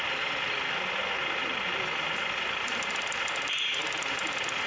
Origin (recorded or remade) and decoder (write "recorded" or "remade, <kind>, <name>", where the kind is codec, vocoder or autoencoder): recorded